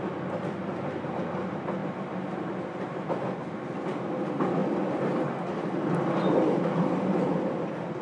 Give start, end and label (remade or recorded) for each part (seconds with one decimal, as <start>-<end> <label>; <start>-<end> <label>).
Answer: 0.0-8.0 recorded